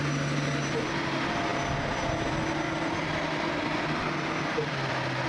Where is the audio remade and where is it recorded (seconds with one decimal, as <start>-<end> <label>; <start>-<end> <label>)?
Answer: 0.0-5.3 recorded